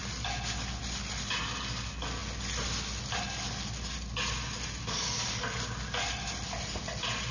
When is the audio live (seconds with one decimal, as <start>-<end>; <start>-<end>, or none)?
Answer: 0.0-7.3